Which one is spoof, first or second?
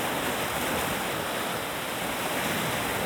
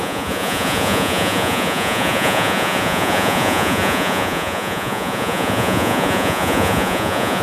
second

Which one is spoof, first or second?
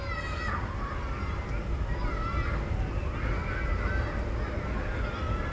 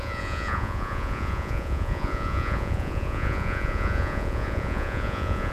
second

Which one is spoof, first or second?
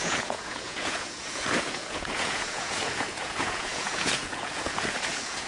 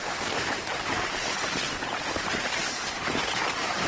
first